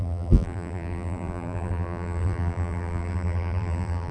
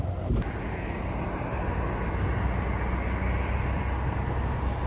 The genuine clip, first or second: second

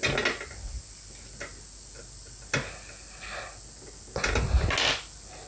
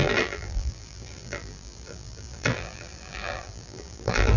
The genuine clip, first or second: first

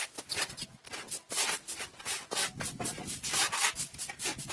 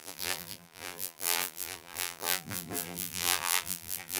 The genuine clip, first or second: first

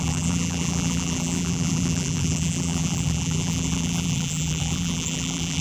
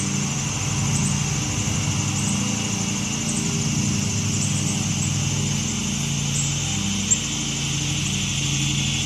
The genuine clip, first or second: second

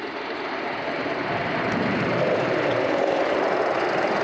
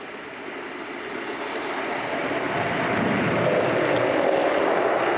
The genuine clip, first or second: second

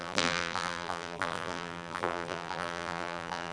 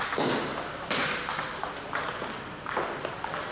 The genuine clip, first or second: second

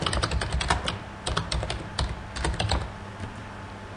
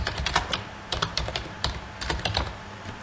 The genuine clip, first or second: first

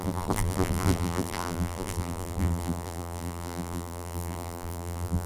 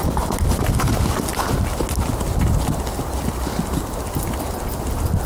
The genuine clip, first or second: second